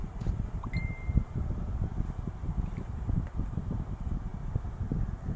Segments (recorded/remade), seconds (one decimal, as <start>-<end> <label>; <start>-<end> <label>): 0.0-5.4 remade